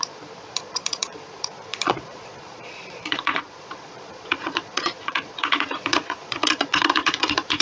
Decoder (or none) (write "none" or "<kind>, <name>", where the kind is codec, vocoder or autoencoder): vocoder, Vocos